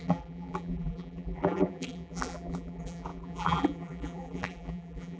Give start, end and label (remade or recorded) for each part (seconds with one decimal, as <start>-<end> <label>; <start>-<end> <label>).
0.0-5.2 remade